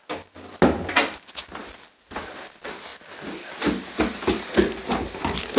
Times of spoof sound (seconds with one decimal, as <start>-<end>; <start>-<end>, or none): none